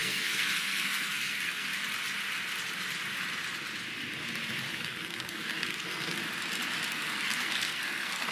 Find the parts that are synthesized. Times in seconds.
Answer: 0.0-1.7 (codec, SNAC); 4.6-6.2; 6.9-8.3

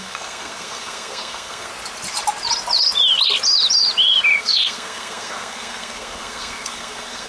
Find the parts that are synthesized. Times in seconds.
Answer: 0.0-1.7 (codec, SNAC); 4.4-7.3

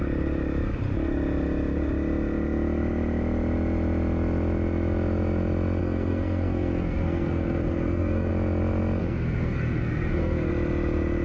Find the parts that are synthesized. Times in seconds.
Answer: 5.8-8.3 (codec, SNAC); 9.0-10.5

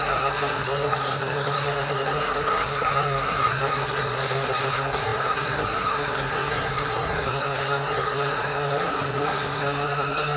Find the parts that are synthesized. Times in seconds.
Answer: 0.0-10.4 (codec, SNAC)

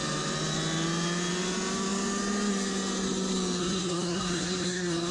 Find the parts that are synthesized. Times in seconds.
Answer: 3.6-5.1 (codec, SNAC)

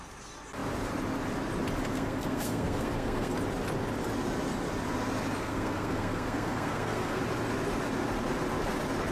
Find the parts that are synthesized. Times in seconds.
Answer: 1.9-3.3 (codec, SNAC); 5.4-7.2

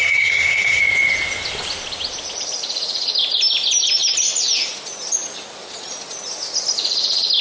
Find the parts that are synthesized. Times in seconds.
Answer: 0.0-0.8 (codec, SNAC)

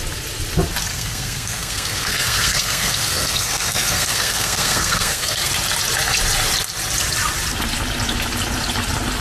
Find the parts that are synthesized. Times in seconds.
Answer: 0.9-5.5 (codec, SNAC)